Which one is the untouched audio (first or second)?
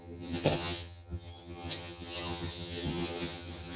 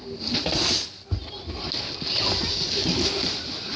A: second